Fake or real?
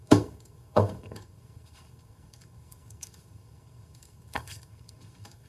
fake